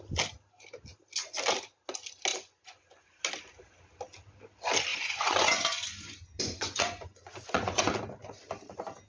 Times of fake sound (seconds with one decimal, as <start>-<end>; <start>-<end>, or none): 2.3-3.2; 4.9-8.0